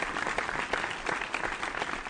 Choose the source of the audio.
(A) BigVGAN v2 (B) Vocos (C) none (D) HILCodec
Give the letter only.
C